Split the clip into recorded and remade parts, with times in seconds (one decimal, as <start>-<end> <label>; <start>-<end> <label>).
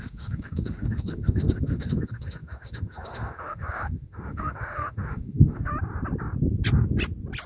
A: 0.0-5.7 remade; 5.7-7.5 recorded